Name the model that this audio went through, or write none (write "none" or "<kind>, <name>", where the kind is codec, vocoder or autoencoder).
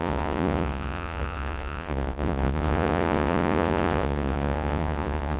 vocoder, Vocos